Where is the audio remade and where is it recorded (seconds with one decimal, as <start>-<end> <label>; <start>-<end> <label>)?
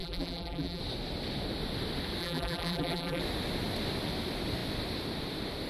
0.0-0.8 remade; 0.8-2.2 recorded; 2.2-3.2 remade; 3.2-5.7 recorded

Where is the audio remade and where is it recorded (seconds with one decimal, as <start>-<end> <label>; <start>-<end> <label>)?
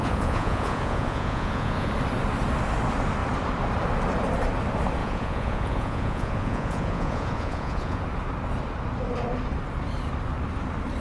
0.0-1.9 remade; 1.9-5.0 recorded; 5.0-8.0 remade; 8.0-11.0 recorded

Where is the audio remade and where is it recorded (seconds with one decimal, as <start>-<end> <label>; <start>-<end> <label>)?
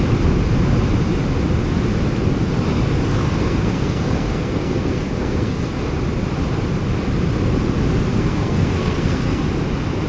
0.0-3.1 recorded; 3.1-5.8 remade; 5.8-8.1 recorded; 8.1-9.4 remade; 9.4-10.1 recorded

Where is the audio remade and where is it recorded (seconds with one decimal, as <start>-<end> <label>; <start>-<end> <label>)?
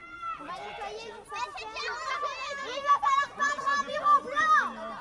0.0-5.0 recorded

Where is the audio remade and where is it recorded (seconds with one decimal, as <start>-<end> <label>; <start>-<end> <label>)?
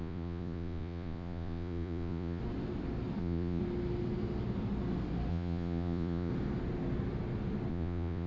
0.0-2.4 remade; 2.4-3.2 recorded; 3.2-3.6 remade; 3.6-5.3 recorded; 5.3-6.3 remade; 6.3-7.7 recorded; 7.7-8.3 remade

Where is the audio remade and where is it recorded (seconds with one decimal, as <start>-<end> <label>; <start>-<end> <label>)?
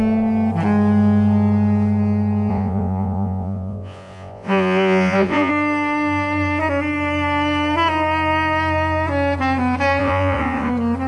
0.0-2.5 recorded; 2.5-5.5 remade; 5.5-10.0 recorded; 10.0-10.7 remade; 10.7-11.1 recorded